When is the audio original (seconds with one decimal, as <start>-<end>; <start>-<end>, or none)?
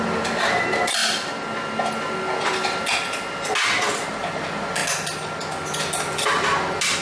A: 0.0-7.0